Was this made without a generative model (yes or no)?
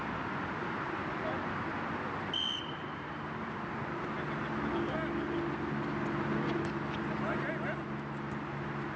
yes